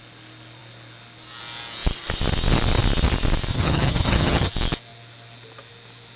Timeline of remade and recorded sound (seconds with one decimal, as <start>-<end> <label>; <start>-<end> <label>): 0.0-3.5 recorded; 3.5-4.5 remade; 4.5-6.2 recorded